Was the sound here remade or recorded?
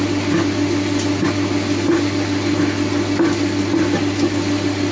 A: recorded